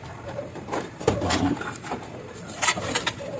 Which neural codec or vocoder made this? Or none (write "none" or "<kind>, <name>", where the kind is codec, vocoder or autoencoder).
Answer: vocoder, BigVGAN v2